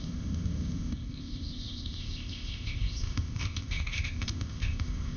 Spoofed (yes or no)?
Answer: yes